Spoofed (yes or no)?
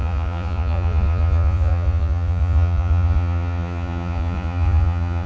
yes